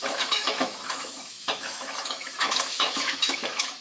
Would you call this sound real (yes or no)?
no